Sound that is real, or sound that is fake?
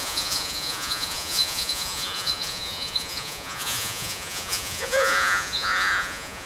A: fake